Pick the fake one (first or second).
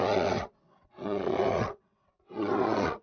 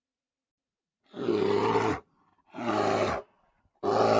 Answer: first